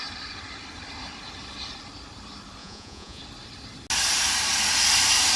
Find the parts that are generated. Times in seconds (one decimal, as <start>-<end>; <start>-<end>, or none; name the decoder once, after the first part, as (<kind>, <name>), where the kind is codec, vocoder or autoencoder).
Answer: 2.6-3.2 (vocoder, Vocos)